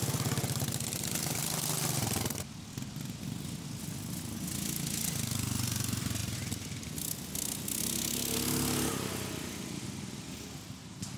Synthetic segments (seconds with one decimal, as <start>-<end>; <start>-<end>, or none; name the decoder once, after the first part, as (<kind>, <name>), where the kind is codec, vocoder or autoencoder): none